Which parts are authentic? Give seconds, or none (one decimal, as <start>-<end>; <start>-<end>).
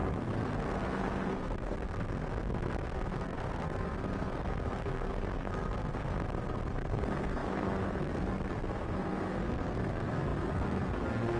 none